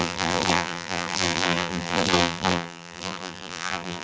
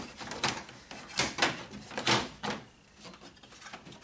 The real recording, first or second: second